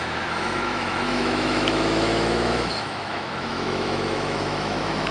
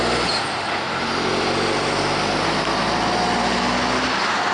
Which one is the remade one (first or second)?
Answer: first